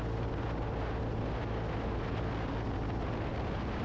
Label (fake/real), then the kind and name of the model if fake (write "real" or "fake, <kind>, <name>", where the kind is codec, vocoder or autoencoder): real